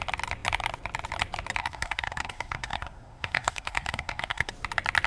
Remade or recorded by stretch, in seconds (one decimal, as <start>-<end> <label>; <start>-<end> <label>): 0.0-1.6 recorded; 1.6-4.5 remade; 4.5-5.1 recorded